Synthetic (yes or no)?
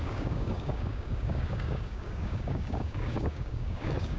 yes